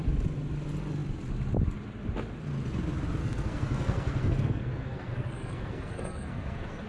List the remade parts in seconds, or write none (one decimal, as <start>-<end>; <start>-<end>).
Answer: 3.2-6.9